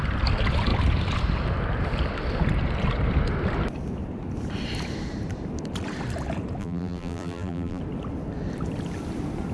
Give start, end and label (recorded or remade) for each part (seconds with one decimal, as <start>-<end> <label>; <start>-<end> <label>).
0.0-6.6 recorded; 6.6-7.8 remade; 7.8-9.5 recorded